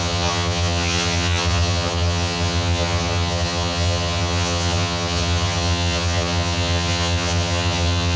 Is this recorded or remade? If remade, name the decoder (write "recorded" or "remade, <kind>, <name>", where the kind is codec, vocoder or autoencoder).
remade, vocoder, HiFi-GAN